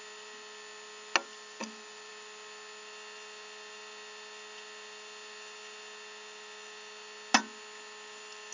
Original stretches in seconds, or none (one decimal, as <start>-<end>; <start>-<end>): 0.0-1.2; 2.1-8.5